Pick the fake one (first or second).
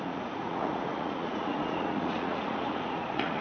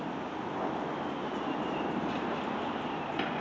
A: first